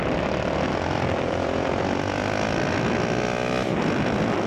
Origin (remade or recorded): recorded